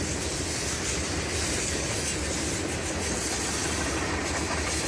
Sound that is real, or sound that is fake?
real